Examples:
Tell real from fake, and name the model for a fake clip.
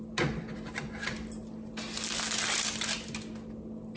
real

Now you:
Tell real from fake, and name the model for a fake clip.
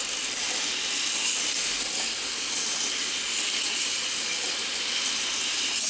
real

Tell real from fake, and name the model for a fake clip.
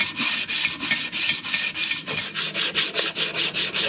real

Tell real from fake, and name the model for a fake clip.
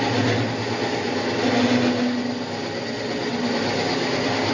real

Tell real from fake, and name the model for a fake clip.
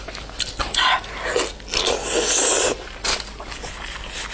real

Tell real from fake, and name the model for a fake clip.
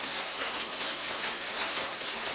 fake, codec, SNAC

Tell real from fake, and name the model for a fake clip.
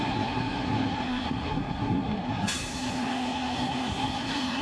fake, codec, SNAC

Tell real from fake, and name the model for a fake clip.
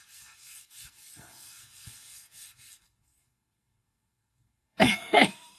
fake, codec, SNAC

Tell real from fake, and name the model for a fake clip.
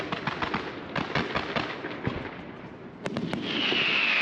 real